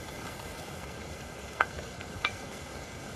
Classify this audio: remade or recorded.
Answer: remade